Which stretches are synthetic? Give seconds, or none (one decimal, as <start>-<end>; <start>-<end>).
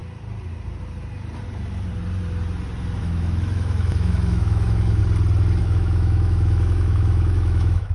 3.0-5.0; 5.6-7.9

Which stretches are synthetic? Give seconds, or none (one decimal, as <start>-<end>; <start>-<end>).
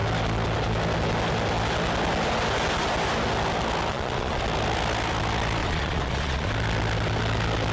3.9-4.4; 5.6-6.5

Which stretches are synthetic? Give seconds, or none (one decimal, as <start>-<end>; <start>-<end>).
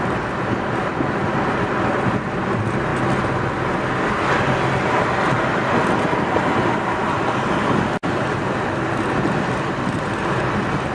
none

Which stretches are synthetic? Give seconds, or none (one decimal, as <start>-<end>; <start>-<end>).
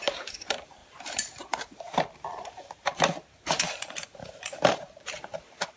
0.0-5.8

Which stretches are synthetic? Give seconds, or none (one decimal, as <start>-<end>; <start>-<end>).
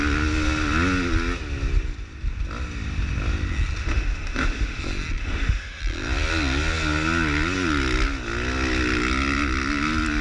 3.8-4.8; 5.2-5.8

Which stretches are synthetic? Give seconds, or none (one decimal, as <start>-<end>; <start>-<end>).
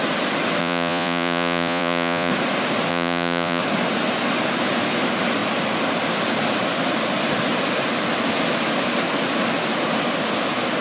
0.6-2.3; 2.9-3.6